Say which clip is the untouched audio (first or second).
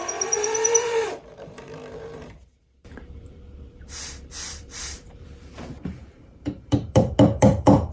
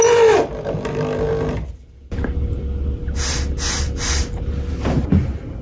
second